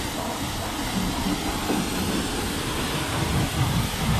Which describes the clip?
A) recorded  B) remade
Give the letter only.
A